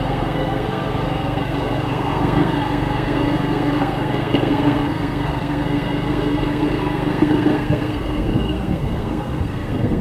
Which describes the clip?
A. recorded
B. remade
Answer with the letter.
B